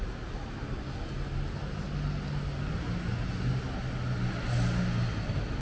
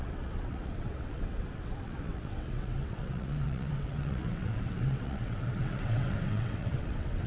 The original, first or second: first